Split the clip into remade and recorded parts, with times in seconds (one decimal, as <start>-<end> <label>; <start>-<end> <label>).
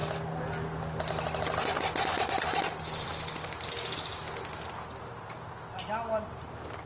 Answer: 0.0-6.9 remade